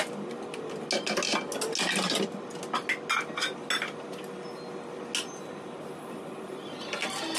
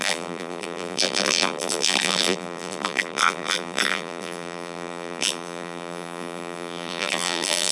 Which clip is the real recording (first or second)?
first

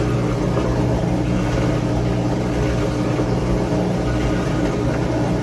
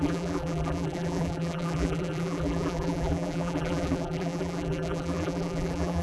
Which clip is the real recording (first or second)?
first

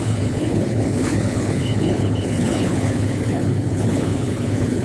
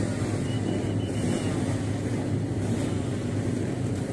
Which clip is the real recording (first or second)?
second